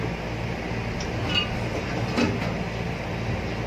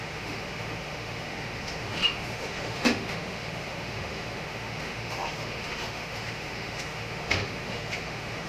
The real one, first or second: first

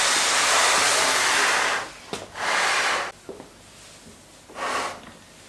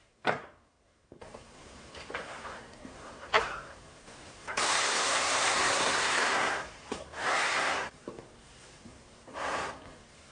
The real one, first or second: first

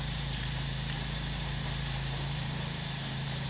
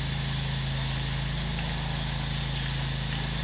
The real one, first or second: second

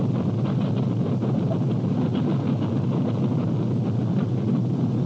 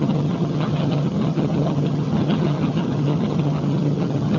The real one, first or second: first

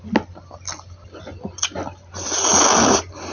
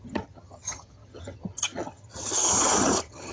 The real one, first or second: first